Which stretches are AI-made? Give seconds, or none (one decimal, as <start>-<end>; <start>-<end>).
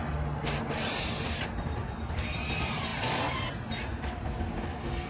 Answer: none